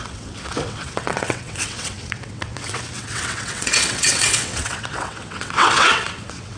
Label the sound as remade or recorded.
remade